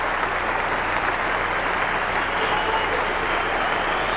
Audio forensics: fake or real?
real